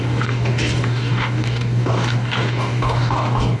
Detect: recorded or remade remade